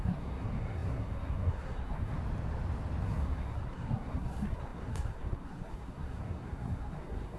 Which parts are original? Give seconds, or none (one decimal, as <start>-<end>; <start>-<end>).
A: 2.2-3.0